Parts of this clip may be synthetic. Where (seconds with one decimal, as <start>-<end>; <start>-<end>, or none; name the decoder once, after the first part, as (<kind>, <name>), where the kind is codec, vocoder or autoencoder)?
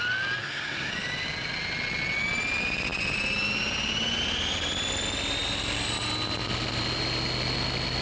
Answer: 0.4-0.9 (codec, SNAC)